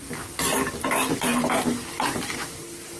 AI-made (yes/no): no